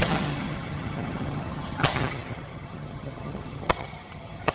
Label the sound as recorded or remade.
remade